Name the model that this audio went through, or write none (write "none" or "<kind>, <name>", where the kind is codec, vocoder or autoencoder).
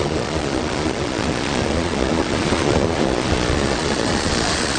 vocoder, Vocos